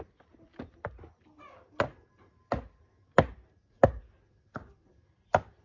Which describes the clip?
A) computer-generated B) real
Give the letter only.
B